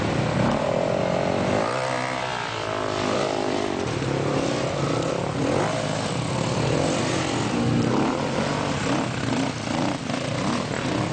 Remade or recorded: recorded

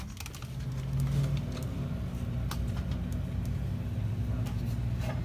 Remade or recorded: recorded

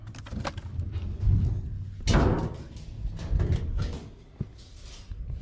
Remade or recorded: recorded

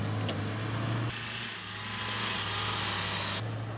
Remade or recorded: recorded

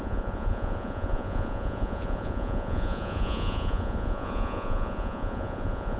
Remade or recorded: remade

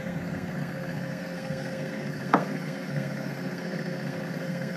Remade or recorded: remade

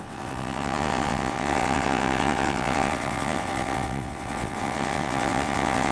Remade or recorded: remade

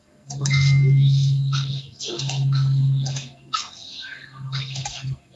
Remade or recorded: remade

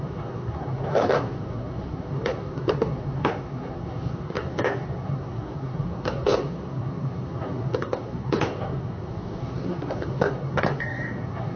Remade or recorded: remade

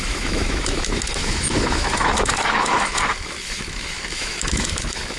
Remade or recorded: remade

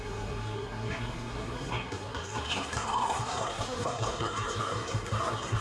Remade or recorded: remade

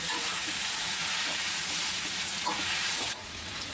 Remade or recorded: remade